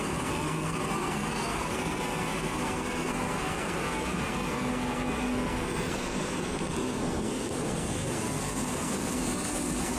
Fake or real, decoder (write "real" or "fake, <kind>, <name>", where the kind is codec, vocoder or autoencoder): fake, codec, SNAC